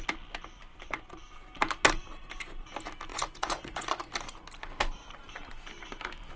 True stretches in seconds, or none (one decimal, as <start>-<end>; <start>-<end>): 0.0-3.1; 4.1-6.4